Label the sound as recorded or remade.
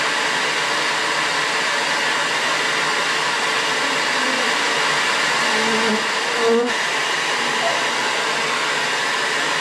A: recorded